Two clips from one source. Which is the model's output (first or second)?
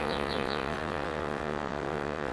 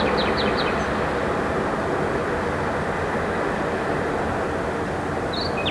first